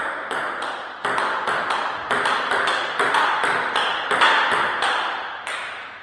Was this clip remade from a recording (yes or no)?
no